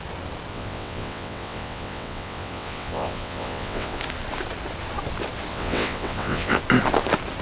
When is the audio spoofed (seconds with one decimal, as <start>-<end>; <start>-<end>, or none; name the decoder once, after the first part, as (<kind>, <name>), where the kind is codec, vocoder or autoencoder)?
0.5-4.0 (vocoder, WaveNeXt); 5.5-6.6